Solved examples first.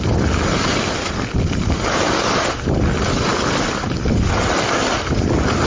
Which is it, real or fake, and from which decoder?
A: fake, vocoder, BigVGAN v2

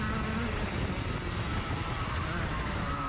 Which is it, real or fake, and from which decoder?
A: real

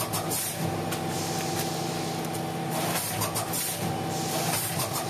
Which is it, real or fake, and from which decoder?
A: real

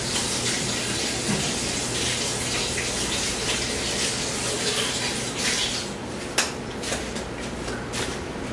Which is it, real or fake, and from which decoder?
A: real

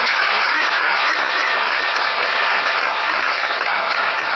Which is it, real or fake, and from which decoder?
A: fake, codec, SNAC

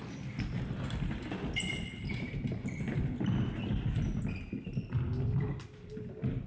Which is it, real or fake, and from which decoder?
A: real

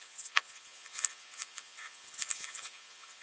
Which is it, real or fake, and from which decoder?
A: fake, vocoder, Vocos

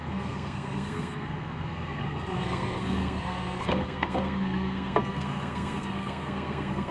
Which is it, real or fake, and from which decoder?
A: fake, codec, SNAC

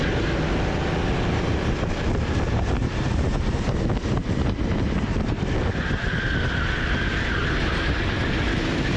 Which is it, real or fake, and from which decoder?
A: real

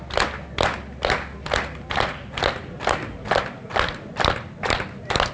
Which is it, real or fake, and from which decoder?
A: real